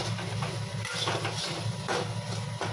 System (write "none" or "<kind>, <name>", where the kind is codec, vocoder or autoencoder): none